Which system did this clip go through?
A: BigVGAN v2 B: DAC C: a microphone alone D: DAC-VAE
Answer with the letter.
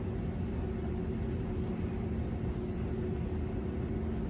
C